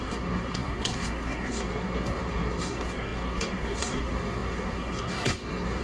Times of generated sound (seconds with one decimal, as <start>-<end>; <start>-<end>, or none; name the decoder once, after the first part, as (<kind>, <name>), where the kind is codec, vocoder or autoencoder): 0.0-5.8 (codec, SNAC)